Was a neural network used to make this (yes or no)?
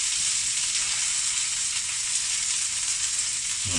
no